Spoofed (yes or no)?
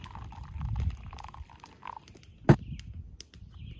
no